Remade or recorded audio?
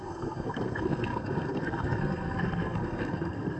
remade